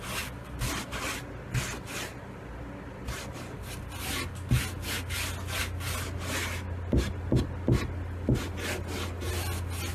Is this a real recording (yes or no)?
yes